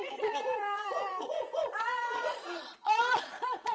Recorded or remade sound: remade